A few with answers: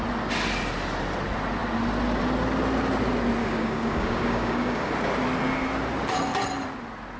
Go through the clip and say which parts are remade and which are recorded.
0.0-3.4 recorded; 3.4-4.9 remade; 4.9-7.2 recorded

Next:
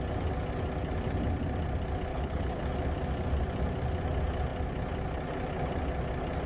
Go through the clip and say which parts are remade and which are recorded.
0.0-2.1 recorded; 2.1-2.6 remade; 2.6-6.5 recorded

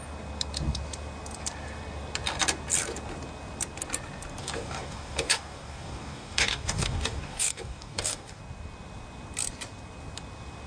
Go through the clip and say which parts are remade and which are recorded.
0.0-4.4 recorded; 4.4-8.4 remade; 8.4-10.7 recorded

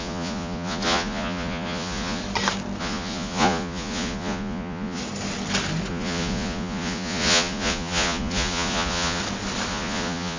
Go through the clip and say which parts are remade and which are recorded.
0.0-2.2 remade; 2.2-2.8 recorded; 2.8-5.0 remade; 5.0-5.9 recorded; 5.9-9.2 remade; 9.2-9.7 recorded; 9.7-10.4 remade